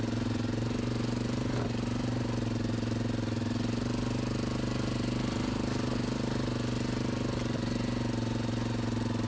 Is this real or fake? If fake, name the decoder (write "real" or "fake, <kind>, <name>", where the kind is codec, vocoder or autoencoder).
real